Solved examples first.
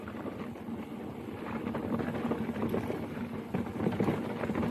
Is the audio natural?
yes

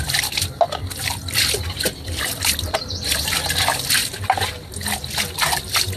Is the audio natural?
yes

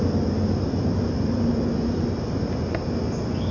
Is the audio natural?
yes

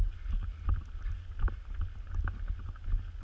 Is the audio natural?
yes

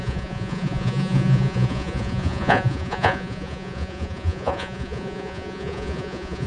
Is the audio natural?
no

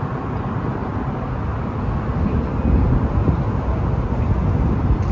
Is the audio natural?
yes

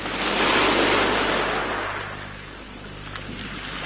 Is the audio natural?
yes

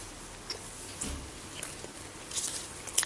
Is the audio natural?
yes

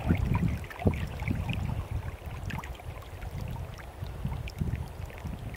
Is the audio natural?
yes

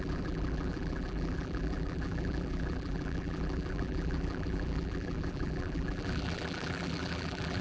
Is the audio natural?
no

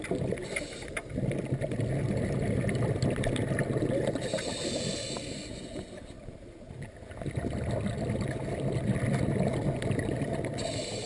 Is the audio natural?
yes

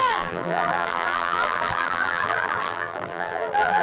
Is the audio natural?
no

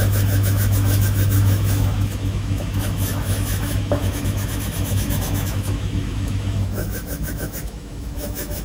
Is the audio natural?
no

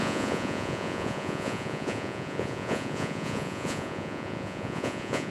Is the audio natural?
no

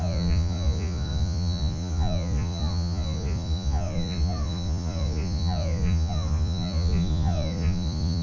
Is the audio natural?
no